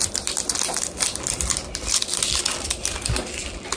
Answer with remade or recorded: recorded